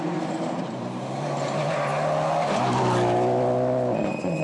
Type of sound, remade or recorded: recorded